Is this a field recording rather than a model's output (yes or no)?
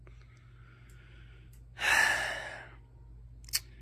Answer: yes